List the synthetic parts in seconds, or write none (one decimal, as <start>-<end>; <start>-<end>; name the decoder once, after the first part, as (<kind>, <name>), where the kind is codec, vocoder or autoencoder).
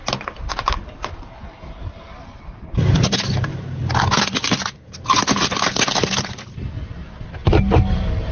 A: none